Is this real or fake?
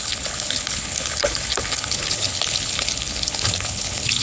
fake